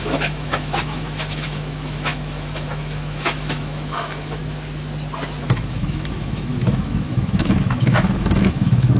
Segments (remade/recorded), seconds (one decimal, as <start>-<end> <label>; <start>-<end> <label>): 0.0-4.4 remade; 4.4-5.4 recorded; 5.4-9.0 remade